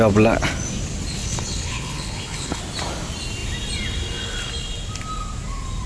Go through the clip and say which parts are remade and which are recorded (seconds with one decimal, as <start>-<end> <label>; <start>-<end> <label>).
0.0-1.2 recorded; 1.2-2.6 remade; 2.6-5.9 recorded